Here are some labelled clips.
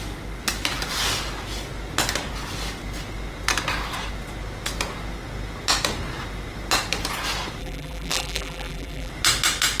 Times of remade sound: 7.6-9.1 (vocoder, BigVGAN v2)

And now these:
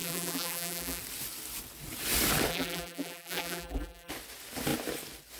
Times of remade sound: 0.0-1.0 (vocoder, BigVGAN v2); 2.5-4.1

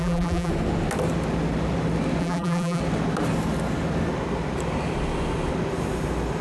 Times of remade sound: 0.0-0.5 (vocoder, BigVGAN v2); 2.2-2.8

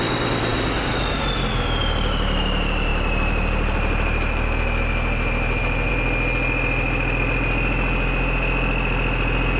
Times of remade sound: 2.9-5.9 (vocoder, BigVGAN v2)

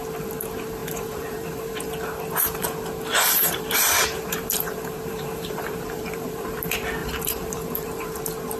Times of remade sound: 0.8-1.9 (vocoder, BigVGAN v2); 3.1-6.6; 7.0-8.2

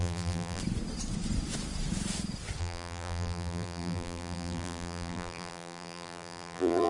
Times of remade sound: 0.0-0.6 (vocoder, BigVGAN v2); 2.6-6.9

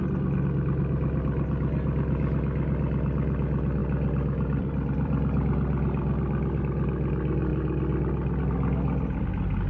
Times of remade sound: 3.8-6.6 (vocoder, BigVGAN v2)

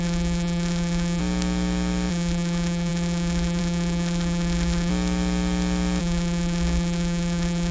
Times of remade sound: 0.0-1.2 (vocoder, BigVGAN v2); 2.1-4.9; 6.0-7.7